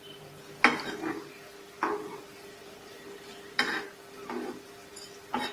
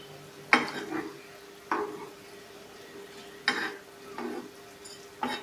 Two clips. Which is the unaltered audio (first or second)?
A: second